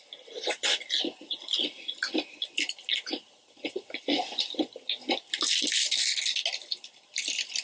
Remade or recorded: recorded